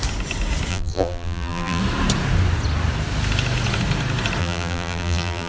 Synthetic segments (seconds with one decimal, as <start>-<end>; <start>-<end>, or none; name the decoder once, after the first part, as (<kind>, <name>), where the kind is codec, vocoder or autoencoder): 0.7-1.8 (vocoder, BigVGAN v2); 4.4-5.5

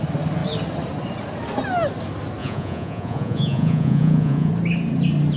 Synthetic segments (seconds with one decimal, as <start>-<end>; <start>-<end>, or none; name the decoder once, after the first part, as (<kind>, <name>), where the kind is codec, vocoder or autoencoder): 2.4-4.5 (vocoder, Vocos)

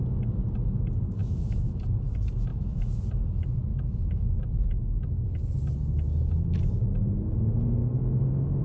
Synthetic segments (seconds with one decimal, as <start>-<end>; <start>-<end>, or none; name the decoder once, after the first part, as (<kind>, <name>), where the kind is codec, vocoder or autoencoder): 1.2-1.8 (autoencoder, DAC-VAE); 2.5-3.0; 3.7-4.5; 7.8-8.6

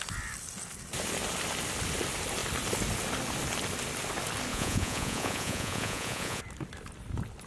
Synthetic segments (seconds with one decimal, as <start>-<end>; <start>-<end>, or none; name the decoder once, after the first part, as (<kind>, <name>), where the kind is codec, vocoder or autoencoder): 4.5-6.4 (vocoder, Vocos)

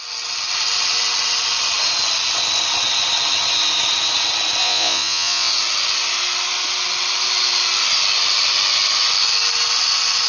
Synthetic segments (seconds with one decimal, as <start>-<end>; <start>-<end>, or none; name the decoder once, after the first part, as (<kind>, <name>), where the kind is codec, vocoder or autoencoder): 4.6-5.5 (vocoder, Vocos)

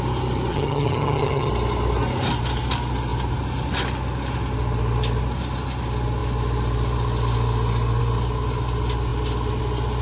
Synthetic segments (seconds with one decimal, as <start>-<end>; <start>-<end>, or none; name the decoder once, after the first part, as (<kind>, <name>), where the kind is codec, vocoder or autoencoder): 0.5-1.5 (vocoder, HiFi-GAN)